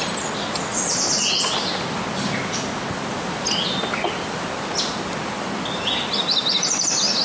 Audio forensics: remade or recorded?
recorded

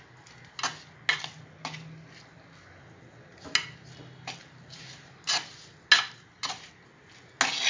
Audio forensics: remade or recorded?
recorded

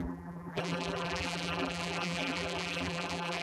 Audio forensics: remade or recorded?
remade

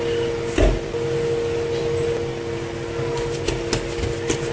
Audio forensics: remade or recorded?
recorded